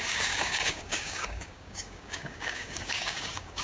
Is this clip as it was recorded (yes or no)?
no